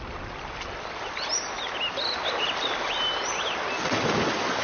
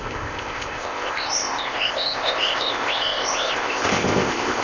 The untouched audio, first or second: first